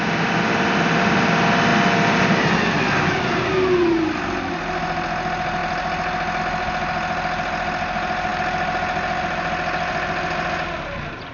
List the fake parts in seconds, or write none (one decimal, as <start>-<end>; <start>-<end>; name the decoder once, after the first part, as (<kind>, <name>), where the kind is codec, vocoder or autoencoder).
none